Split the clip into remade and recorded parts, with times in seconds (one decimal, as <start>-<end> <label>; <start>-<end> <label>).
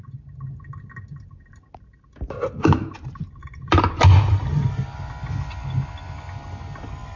0.0-3.4 recorded; 3.4-5.1 remade; 5.1-7.2 recorded